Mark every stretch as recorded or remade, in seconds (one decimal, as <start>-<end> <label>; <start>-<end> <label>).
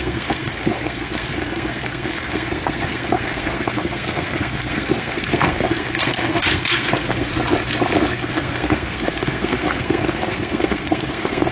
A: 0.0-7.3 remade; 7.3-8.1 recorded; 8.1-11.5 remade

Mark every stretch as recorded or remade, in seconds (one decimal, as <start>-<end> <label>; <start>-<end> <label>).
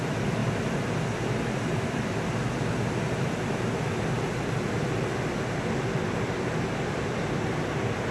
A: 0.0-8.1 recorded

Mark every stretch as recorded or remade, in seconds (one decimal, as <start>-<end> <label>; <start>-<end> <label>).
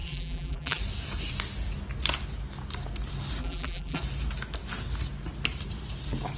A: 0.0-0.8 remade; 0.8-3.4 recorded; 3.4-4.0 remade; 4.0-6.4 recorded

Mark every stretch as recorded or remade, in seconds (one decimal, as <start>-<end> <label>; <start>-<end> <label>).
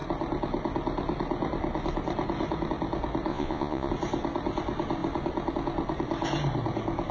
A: 0.0-3.3 recorded; 3.3-3.9 remade; 3.9-7.1 recorded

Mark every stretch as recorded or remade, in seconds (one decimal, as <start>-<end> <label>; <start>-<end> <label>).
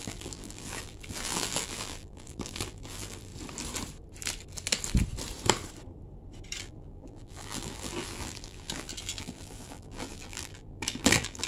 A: 0.0-3.3 remade; 3.3-6.6 recorded; 6.6-11.5 remade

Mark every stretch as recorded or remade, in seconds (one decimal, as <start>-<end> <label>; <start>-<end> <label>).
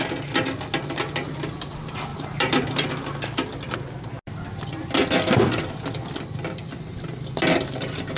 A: 0.0-2.1 recorded; 2.1-2.9 remade; 2.9-8.2 recorded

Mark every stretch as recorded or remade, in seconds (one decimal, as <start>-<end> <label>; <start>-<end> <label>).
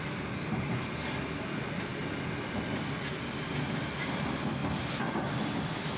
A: 0.0-6.0 recorded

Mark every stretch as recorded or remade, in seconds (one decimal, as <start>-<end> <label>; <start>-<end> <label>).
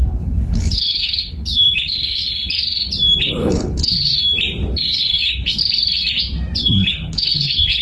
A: 0.0-2.2 remade; 2.2-3.2 recorded; 3.2-4.1 remade; 4.1-4.9 recorded; 4.9-5.6 remade; 5.6-6.6 recorded; 6.6-7.8 remade